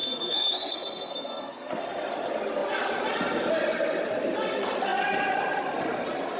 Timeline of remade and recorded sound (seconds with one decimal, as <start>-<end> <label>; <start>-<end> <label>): 0.0-1.8 remade; 1.8-6.4 recorded